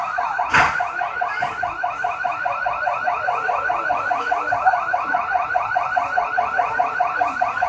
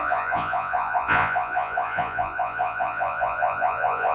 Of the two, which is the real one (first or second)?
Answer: first